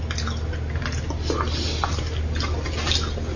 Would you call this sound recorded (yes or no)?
yes